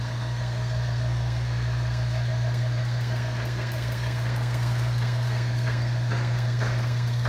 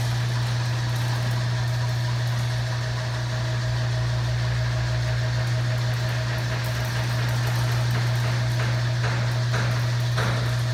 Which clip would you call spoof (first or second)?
first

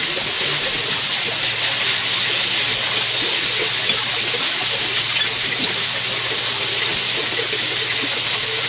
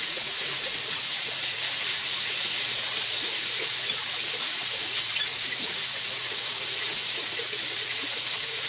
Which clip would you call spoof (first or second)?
second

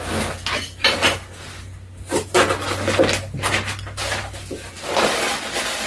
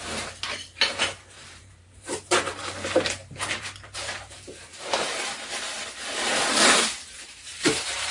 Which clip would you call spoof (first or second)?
second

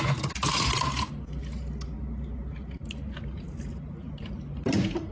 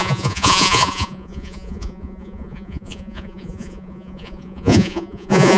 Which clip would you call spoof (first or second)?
second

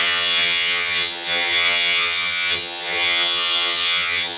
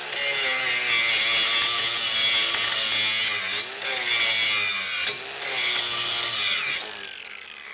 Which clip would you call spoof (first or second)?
first